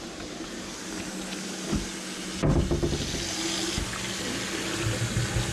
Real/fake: real